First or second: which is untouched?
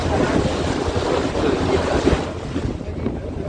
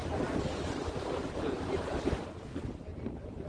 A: first